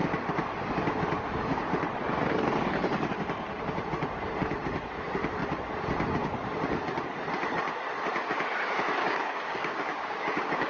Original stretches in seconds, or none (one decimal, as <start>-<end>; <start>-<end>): 0.0-9.0